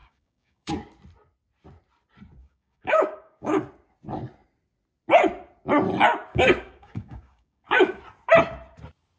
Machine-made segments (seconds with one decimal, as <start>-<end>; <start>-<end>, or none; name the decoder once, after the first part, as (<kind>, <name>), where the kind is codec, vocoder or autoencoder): 0.0-0.7 (codec, DAC); 2.4-3.6; 6.3-8.0